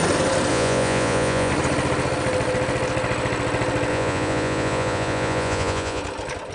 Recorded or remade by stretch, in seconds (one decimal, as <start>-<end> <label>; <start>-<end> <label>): 0.0-0.5 recorded; 0.5-1.5 remade; 1.5-3.9 recorded; 3.9-6.0 remade; 6.0-6.5 recorded